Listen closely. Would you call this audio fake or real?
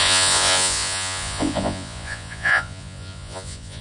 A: fake